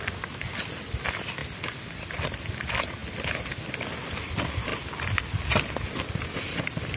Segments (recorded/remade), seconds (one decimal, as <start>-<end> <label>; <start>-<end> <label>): 0.0-7.0 recorded